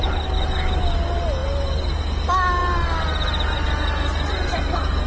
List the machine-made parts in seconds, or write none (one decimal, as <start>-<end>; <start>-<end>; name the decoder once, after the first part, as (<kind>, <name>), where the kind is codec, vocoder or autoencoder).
none